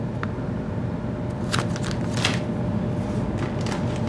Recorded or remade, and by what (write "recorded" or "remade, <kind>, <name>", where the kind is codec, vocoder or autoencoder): recorded